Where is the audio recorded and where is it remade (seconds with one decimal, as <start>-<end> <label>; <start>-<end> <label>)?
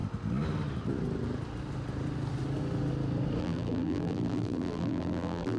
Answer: 0.0-3.4 recorded; 3.4-5.6 remade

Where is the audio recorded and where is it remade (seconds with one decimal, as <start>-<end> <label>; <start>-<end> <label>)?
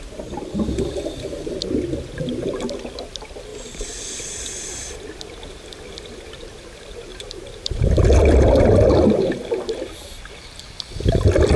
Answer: 0.0-7.1 recorded; 7.1-7.8 remade; 7.8-11.6 recorded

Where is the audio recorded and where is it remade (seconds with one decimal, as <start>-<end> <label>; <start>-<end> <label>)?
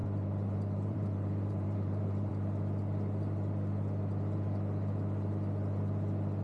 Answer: 0.0-2.3 remade; 2.3-6.4 recorded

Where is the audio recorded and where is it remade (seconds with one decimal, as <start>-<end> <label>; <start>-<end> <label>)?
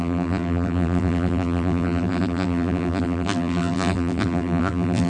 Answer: 0.0-5.1 remade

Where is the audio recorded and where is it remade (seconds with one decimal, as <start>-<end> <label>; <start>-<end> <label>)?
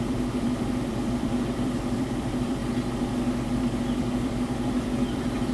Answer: 0.0-2.6 remade; 2.6-3.6 recorded; 3.6-5.5 remade